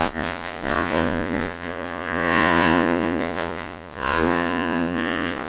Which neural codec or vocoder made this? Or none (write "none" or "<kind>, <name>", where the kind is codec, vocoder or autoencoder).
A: vocoder, Vocos